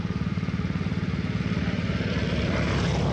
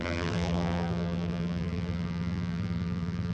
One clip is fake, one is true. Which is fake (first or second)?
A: second